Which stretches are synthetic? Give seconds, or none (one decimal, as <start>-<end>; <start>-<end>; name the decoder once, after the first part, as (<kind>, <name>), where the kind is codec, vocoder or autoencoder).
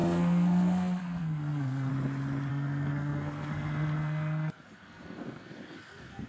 0.0-1.9 (codec, SNAC); 2.5-6.3